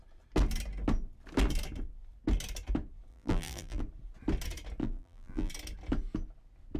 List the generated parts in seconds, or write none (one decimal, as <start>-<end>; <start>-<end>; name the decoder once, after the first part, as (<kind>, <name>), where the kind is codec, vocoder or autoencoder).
3.1-3.8 (vocoder, BigVGAN v2); 4.8-5.5